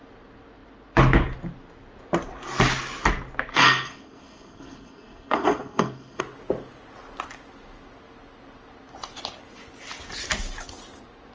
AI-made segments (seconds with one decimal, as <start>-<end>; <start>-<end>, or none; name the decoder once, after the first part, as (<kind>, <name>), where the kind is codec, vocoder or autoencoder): 3.5-6.2 (codec, SNAC)

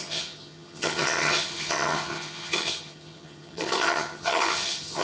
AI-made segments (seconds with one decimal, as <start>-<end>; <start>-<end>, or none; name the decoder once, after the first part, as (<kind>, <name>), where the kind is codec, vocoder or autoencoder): 0.0-5.0 (vocoder, HiFi-GAN)

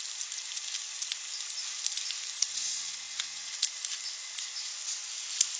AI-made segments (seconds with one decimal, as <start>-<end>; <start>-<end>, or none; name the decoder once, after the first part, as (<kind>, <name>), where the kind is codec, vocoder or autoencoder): 2.5-3.5 (vocoder, WaveNeXt)